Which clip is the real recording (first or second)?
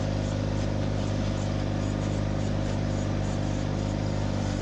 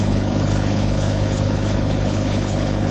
first